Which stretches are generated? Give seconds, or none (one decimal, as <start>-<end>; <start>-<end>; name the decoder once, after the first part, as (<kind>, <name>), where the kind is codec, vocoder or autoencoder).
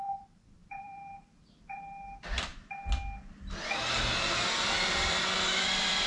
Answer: 0.0-2.5 (vocoder, BigVGAN v2); 4.5-6.1